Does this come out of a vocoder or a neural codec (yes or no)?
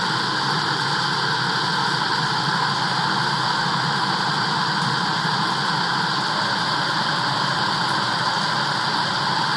no